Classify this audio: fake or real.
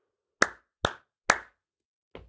real